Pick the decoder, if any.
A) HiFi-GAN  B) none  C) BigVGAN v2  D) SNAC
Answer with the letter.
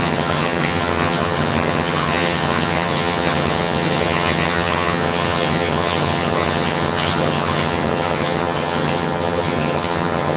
A